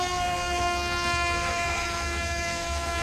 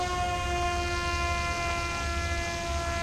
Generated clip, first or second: first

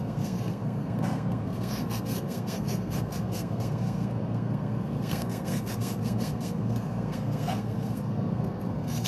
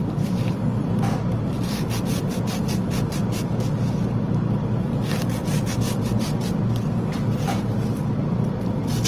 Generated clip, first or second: first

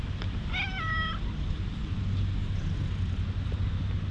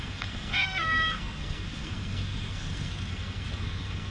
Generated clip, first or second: second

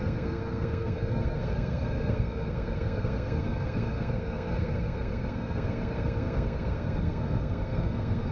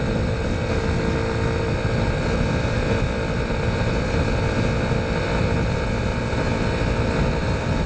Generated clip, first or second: first